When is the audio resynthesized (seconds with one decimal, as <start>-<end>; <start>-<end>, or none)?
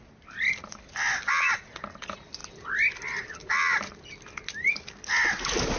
none